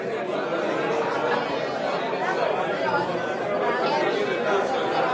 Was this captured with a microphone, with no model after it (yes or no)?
yes